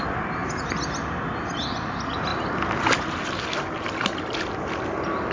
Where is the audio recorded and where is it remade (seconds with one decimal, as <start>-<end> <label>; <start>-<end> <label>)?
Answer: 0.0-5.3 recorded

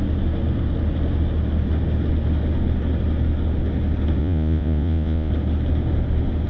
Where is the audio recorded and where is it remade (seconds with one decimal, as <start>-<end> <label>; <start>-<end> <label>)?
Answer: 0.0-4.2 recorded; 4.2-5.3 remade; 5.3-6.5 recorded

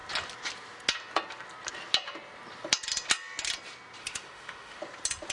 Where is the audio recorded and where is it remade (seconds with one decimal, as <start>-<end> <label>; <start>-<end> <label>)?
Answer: 0.0-4.0 recorded; 4.0-4.8 remade; 4.8-5.3 recorded

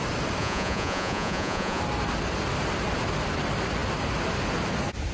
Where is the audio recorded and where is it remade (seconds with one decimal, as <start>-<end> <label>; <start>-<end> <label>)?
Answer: 0.0-0.4 recorded; 0.4-1.8 remade; 1.8-5.1 recorded

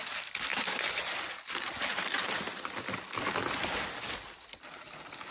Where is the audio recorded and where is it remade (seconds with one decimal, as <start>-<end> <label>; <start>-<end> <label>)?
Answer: 0.0-0.5 recorded; 0.5-2.8 remade; 2.8-5.3 recorded

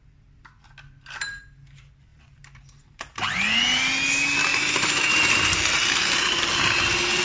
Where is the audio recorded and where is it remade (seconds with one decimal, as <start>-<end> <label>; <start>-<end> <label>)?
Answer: 0.0-2.1 recorded; 2.1-3.6 remade; 3.6-4.5 recorded; 4.5-6.4 remade; 6.4-7.2 recorded

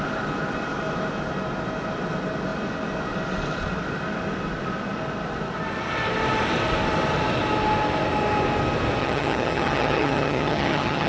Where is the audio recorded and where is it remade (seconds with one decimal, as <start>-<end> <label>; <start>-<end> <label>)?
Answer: 0.0-9.0 recorded; 9.0-11.1 remade